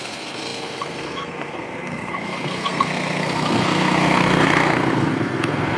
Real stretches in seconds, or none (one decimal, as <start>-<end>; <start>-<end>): none